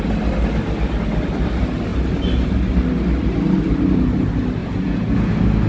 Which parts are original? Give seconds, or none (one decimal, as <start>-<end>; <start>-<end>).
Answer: 0.0-4.6; 5.3-5.7